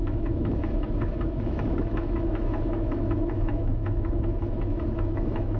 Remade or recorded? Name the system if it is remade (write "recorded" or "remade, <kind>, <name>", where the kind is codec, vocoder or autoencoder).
remade, autoencoder, DAC-VAE